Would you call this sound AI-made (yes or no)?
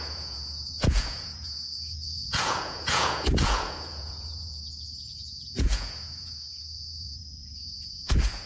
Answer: yes